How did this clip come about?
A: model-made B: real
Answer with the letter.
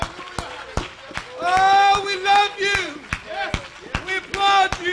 B